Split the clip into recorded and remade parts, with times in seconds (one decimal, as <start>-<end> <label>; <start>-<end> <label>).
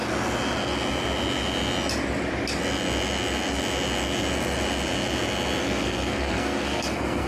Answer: 0.0-5.6 recorded; 5.6-7.3 remade